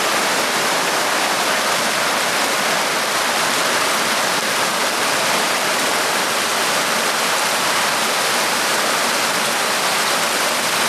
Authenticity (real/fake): real